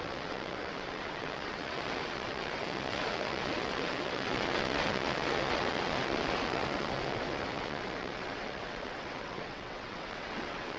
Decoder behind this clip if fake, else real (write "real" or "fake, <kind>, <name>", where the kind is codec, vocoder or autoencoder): fake, vocoder, WaveNeXt